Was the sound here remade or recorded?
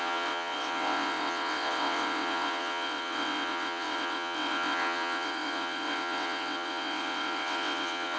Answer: remade